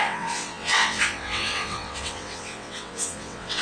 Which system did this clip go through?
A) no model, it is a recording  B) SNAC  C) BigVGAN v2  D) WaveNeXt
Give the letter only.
D